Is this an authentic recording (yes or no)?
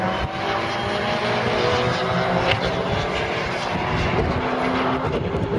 yes